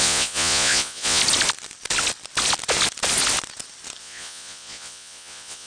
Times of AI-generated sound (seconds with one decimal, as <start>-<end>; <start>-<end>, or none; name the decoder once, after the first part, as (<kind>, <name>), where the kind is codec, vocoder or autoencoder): 0.0-1.2 (vocoder, Vocos); 4.0-5.7